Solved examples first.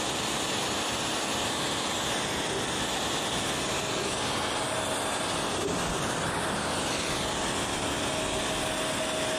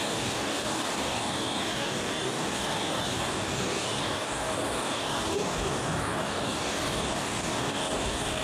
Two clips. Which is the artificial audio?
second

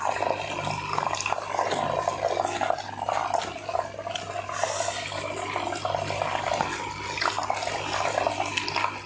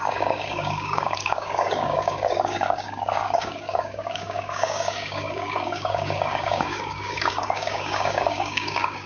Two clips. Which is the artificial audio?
second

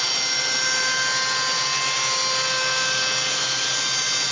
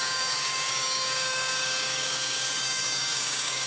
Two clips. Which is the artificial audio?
second